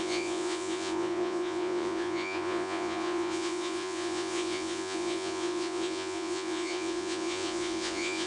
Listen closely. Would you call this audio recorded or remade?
remade